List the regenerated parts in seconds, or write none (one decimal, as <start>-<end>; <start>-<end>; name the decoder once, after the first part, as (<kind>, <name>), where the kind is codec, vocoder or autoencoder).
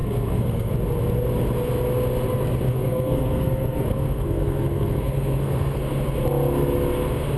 0.0-0.7 (codec, SNAC); 2.7-5.8